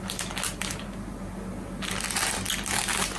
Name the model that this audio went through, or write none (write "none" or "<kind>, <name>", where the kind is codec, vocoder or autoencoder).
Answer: none